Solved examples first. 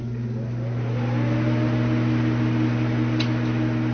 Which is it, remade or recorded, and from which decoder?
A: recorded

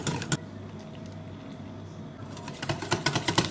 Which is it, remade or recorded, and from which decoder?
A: recorded